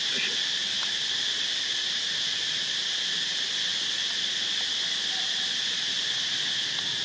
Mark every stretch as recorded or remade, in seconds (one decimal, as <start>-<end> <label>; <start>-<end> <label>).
0.0-7.0 recorded